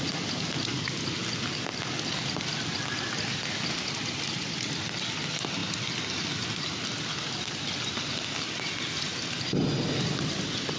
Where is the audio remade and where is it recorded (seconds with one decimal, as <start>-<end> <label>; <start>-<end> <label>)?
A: 0.0-10.8 recorded